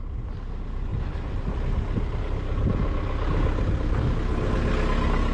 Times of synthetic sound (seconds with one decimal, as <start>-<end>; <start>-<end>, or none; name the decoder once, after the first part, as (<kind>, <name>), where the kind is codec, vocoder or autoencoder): none